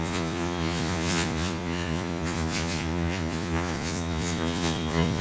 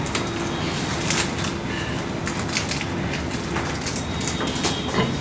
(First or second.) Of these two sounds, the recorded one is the second